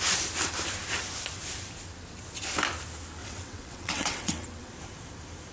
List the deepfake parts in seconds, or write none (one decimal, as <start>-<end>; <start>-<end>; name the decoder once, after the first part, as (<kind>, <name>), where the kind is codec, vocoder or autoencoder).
3.2-4.7 (vocoder, WaveNeXt)